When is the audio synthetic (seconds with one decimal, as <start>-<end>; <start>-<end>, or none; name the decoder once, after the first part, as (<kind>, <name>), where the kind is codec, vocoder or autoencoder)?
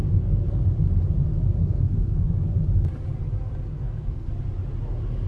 0.0-0.6 (codec, SNAC); 1.6-2.5; 3.7-4.3